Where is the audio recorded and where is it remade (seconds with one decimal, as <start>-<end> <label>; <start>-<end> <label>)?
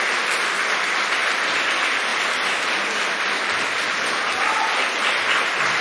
0.0-1.2 recorded; 1.2-1.7 remade; 1.7-2.1 recorded; 2.1-4.1 remade; 4.1-5.8 recorded